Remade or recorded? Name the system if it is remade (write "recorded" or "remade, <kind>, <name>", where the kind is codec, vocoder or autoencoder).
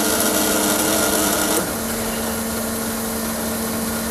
recorded